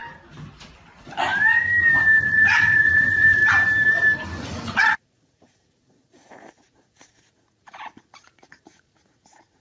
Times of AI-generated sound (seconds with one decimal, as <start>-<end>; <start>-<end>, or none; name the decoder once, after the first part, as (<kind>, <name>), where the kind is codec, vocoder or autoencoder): 2.2-3.4 (vocoder, Vocos); 4.4-9.6